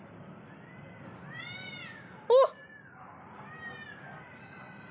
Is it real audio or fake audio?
real